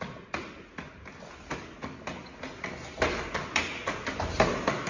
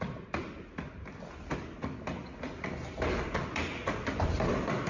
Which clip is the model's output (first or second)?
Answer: second